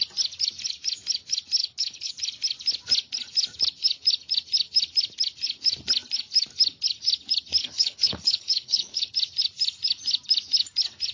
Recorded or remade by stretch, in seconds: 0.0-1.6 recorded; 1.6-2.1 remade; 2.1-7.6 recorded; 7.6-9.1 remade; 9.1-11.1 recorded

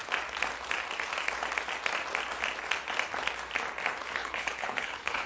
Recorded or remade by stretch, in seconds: 0.0-4.2 recorded; 4.2-5.3 remade

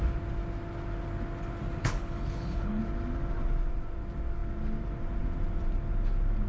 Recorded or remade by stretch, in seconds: 0.0-1.8 recorded; 1.8-2.8 remade; 2.8-6.5 recorded